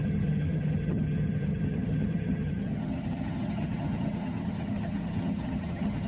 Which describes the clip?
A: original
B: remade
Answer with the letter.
B